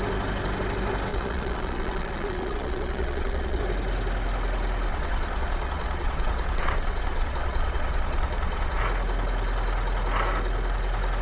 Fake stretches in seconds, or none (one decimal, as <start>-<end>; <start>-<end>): 1.1-3.6; 4.9-8.8